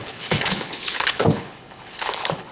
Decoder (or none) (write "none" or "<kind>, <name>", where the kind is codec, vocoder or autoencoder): codec, HILCodec